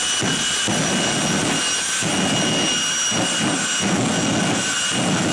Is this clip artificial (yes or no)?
no